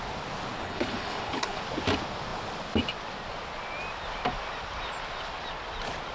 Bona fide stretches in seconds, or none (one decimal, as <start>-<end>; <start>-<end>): 0.0-0.6; 1.6-6.1